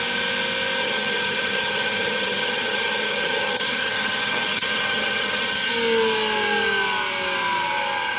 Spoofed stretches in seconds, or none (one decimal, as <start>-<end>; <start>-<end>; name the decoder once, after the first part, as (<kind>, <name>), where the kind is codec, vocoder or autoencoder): 0.8-5.7 (vocoder, HiFi-GAN)